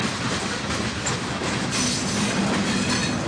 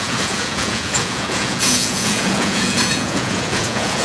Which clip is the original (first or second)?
first